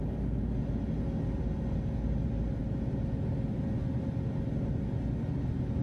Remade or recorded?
recorded